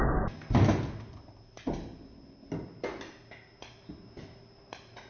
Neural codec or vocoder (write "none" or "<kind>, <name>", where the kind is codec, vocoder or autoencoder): none